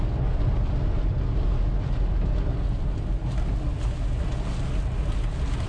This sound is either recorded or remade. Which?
recorded